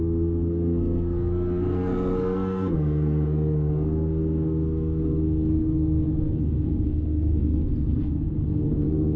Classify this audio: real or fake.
fake